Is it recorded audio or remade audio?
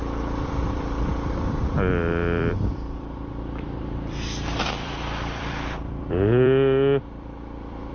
remade